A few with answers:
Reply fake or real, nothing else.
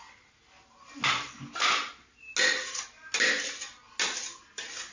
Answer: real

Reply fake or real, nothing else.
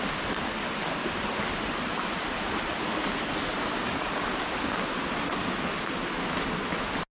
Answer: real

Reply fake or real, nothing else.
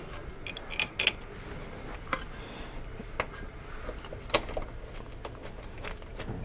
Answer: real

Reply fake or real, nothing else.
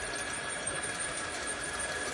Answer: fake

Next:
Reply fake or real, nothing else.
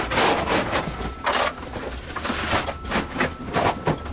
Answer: real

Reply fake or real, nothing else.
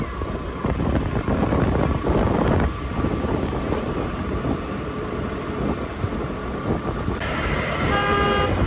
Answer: real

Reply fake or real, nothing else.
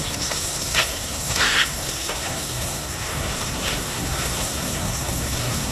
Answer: fake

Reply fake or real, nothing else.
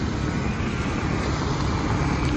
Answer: fake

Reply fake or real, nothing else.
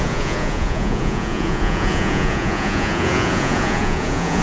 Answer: fake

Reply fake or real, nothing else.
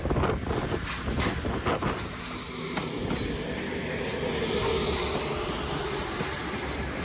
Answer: real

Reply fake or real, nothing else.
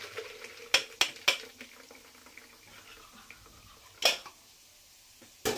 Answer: real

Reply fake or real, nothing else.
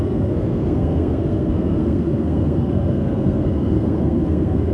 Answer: fake